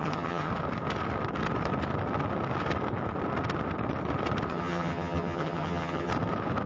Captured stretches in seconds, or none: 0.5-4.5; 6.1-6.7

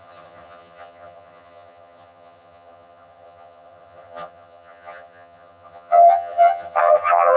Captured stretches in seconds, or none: none

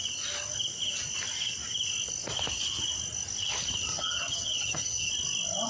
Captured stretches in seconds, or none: 0.0-3.9; 5.1-5.7

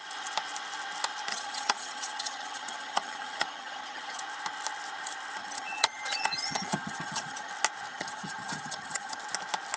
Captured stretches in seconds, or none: 0.0-1.3; 4.2-5.4; 7.5-7.9; 9.2-9.8